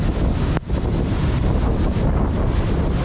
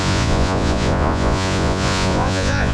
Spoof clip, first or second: second